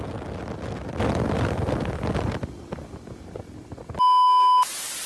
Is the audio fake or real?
real